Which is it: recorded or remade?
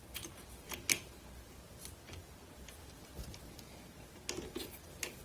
recorded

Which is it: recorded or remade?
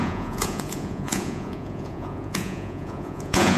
remade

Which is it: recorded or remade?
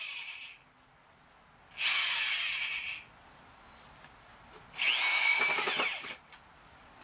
recorded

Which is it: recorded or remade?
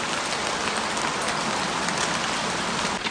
recorded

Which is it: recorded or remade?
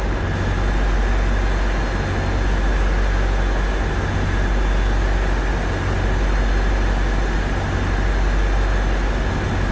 recorded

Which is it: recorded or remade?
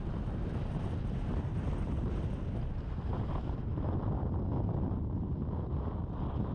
recorded